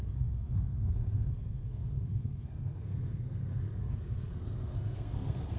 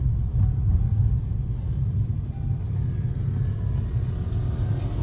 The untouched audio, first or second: second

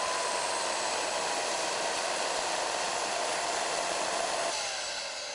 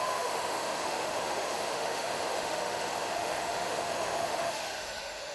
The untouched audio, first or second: first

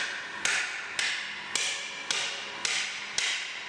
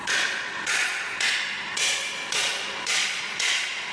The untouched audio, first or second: first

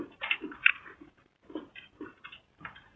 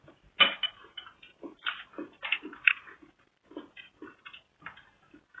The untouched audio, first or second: second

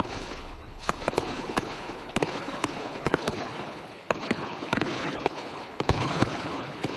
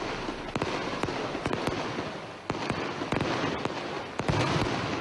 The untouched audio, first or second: second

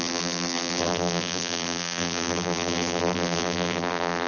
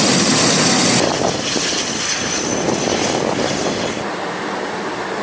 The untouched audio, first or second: second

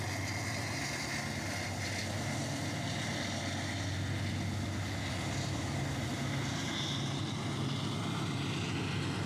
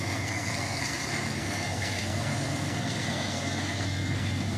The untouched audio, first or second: first